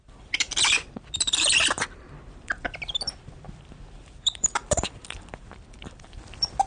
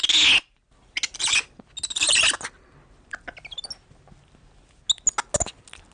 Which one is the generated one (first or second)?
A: first